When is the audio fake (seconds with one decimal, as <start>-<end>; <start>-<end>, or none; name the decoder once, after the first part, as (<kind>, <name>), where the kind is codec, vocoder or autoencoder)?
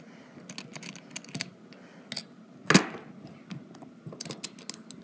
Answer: none